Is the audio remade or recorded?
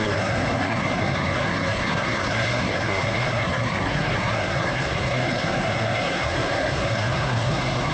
remade